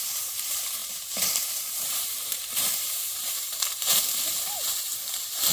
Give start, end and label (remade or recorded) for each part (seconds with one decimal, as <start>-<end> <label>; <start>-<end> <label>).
0.0-5.5 remade